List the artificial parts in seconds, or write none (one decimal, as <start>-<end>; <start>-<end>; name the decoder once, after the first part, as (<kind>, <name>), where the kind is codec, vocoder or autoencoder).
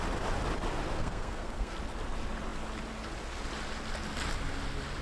1.0-1.7 (codec, SNAC)